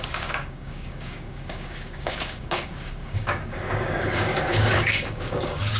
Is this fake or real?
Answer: fake